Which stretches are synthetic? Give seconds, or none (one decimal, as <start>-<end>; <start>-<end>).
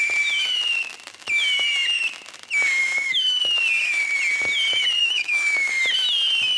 2.8-3.4; 5.0-5.7